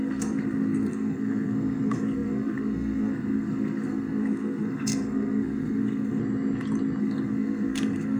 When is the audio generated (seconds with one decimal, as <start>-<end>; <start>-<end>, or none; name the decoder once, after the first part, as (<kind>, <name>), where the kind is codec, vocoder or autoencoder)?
0.0-6.2 (codec, SNAC); 7.0-8.2